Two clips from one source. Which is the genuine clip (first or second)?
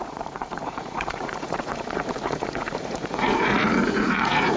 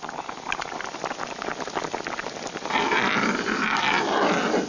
second